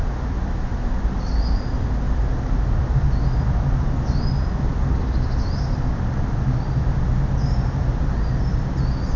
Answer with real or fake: real